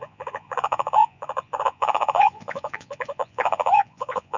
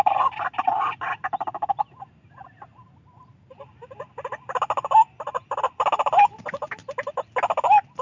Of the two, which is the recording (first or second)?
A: second